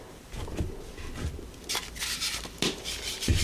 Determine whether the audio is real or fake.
real